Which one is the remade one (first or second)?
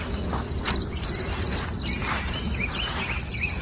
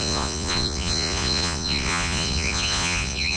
second